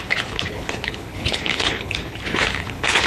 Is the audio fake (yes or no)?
yes